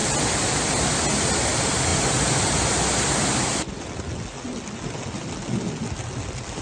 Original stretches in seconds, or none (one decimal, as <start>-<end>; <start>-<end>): 0.0-6.6